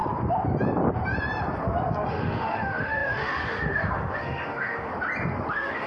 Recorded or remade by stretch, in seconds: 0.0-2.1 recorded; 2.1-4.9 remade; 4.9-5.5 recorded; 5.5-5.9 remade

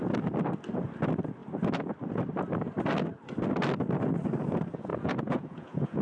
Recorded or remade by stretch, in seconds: 0.0-4.9 recorded; 4.9-6.0 remade

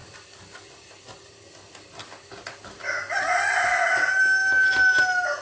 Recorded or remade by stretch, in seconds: 0.0-5.4 recorded

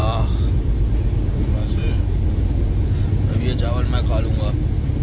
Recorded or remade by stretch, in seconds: 0.0-5.0 recorded

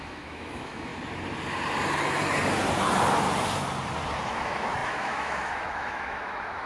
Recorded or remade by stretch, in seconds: 0.0-0.9 remade; 0.9-4.2 recorded; 4.2-6.7 remade

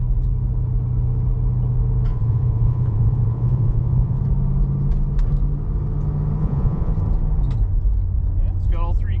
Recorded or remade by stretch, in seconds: 0.0-2.1 recorded; 2.1-4.2 remade; 4.2-6.4 recorded; 6.4-6.9 remade; 6.9-9.2 recorded

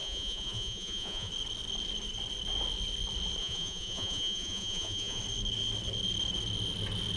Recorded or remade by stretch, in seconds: 0.0-1.3 remade; 1.3-3.4 recorded; 3.4-5.2 remade; 5.2-7.2 recorded

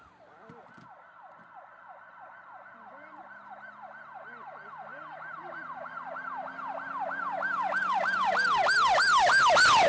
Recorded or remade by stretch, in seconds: 0.0-9.9 recorded